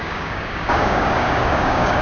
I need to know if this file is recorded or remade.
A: remade